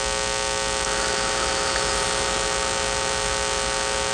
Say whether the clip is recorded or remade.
recorded